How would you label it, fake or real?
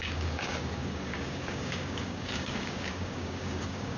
fake